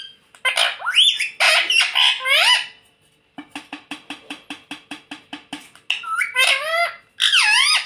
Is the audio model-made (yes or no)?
no